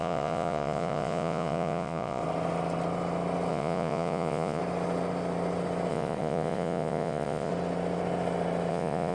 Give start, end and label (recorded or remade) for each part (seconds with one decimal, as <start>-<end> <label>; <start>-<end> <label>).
0.0-2.2 remade; 2.2-3.5 recorded; 3.5-4.6 remade; 4.6-5.9 recorded; 5.9-7.5 remade; 7.5-8.7 recorded; 8.7-9.1 remade